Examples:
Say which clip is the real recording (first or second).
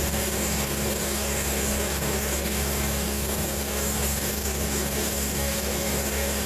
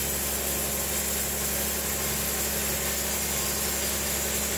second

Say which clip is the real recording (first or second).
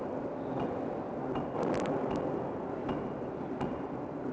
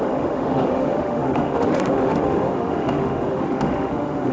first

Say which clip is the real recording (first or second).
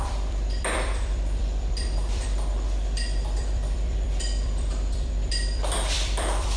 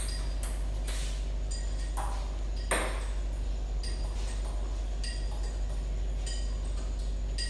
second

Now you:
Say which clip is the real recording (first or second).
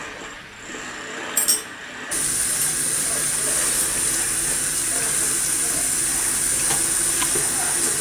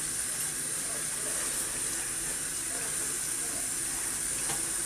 first